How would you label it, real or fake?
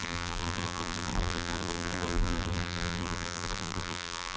fake